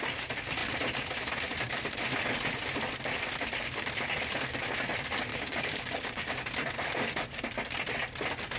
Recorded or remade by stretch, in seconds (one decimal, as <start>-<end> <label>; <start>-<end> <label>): 0.0-5.3 recorded; 5.3-6.3 remade; 6.3-8.6 recorded